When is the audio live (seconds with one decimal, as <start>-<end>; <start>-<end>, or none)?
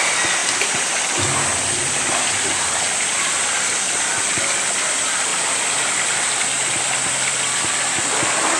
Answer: 0.0-8.6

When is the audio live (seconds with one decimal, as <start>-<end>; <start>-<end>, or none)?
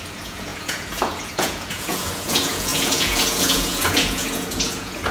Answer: none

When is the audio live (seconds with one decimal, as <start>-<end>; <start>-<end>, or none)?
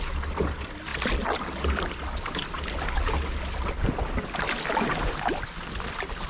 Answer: 0.0-6.3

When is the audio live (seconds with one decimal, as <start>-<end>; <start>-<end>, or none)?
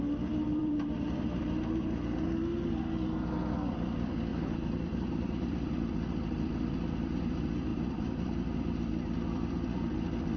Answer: 0.0-0.6; 1.4-4.3; 5.7-7.7; 8.9-10.4